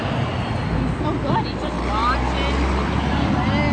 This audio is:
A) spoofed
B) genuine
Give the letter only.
B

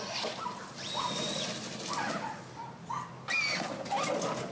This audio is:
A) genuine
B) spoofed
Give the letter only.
A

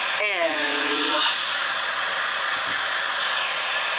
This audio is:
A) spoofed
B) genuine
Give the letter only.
A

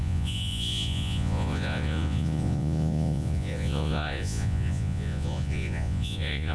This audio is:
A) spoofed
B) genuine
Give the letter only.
A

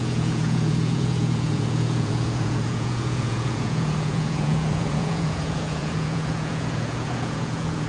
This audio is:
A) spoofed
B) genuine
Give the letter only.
A